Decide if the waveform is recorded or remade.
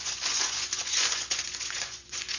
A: remade